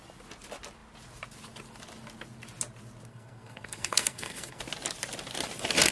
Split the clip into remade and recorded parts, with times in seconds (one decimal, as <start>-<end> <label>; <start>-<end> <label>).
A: 0.0-3.1 recorded; 3.1-4.6 remade; 4.6-5.9 recorded

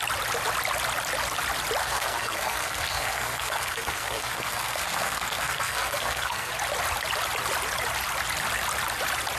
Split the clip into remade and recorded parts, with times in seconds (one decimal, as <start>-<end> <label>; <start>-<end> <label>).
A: 0.0-1.8 recorded; 1.8-6.5 remade; 6.5-9.4 recorded